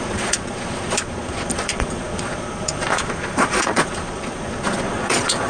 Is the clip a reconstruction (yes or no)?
yes